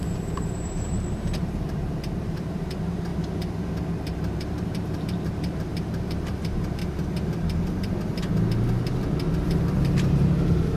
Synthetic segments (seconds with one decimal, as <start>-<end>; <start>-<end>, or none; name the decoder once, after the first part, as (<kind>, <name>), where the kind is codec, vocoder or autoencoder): 0.0-3.1 (vocoder, BigVGAN v2); 3.9-6.8; 9.3-10.8